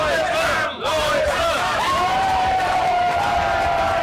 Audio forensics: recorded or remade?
remade